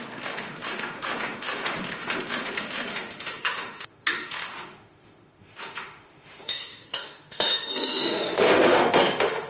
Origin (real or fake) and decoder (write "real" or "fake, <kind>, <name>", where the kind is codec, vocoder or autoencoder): fake, autoencoder, DAC-VAE